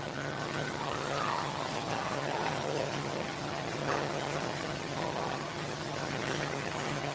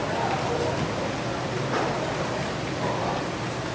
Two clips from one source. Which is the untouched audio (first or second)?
second